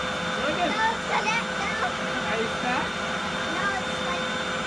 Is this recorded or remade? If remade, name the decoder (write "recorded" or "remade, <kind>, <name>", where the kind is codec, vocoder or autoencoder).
recorded